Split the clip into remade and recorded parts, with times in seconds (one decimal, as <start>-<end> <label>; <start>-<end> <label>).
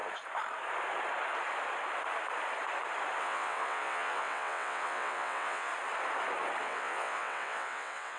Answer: 0.0-3.2 recorded; 3.2-5.7 remade; 5.7-6.6 recorded; 6.6-8.2 remade